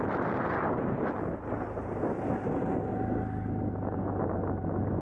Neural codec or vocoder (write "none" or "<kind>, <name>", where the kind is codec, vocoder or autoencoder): none